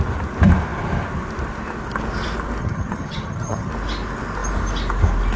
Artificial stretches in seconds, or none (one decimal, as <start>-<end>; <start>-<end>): 2.6-3.7